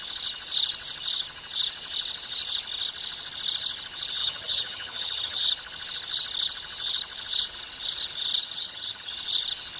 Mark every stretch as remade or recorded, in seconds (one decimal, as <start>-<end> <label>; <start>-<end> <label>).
0.0-4.2 recorded; 4.2-5.4 remade; 5.4-8.4 recorded; 8.4-9.1 remade; 9.1-9.8 recorded